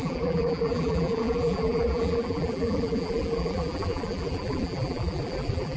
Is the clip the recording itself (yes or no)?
no